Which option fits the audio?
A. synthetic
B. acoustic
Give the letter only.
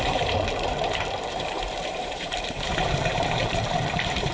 A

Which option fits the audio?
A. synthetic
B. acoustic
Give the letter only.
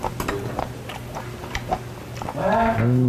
B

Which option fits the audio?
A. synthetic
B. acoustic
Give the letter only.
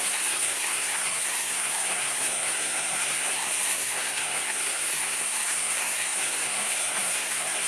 A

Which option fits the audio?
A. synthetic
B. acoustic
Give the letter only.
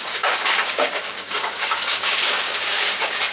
A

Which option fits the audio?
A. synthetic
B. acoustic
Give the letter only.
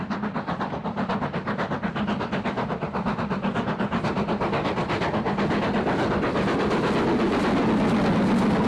B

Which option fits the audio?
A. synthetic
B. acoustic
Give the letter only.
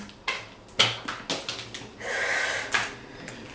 B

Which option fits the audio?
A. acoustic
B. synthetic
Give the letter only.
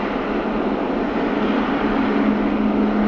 A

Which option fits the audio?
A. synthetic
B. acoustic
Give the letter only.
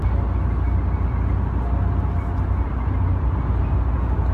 B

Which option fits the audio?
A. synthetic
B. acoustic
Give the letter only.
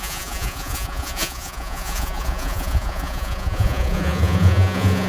A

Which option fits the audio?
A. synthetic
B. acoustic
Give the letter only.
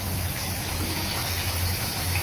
A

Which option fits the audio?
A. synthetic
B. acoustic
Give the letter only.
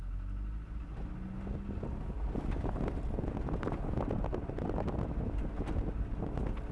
B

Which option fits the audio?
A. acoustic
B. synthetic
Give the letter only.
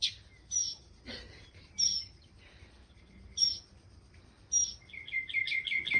A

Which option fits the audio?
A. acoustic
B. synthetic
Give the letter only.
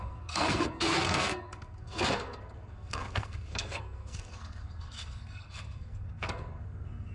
B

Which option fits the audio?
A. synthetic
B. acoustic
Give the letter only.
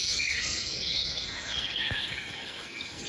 A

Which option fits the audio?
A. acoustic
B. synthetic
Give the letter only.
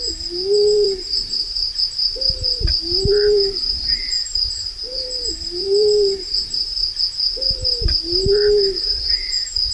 B